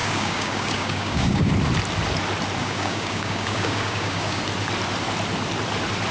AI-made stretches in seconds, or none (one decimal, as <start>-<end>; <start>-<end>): 0.0-1.5; 2.6-4.4